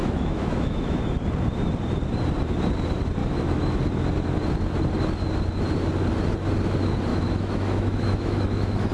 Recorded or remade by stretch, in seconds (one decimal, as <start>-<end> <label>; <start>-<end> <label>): 0.0-1.0 remade; 1.0-3.2 recorded; 3.2-3.8 remade; 3.8-7.1 recorded; 7.1-8.9 remade